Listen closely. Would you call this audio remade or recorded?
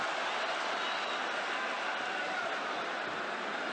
recorded